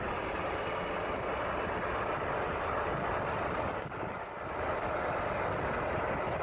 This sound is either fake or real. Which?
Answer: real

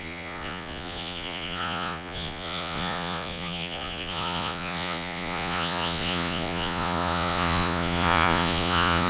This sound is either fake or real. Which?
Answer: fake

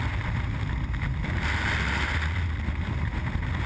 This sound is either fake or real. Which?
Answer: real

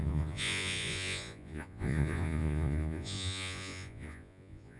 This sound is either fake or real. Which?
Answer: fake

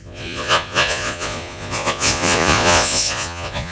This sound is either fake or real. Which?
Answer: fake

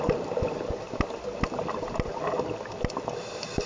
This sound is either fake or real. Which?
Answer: real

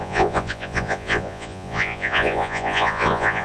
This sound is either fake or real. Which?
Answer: fake